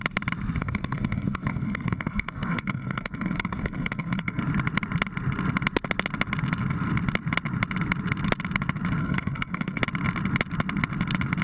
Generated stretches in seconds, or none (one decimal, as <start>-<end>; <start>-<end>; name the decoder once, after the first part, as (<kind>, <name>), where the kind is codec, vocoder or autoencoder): 0.6-4.4 (codec, SNAC); 9.0-9.8